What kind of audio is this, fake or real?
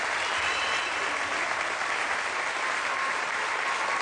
fake